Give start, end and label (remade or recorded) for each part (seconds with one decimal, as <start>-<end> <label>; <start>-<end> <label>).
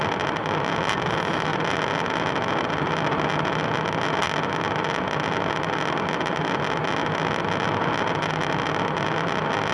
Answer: 0.0-9.7 recorded